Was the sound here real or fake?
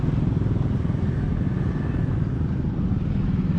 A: real